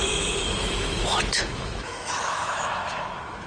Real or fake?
fake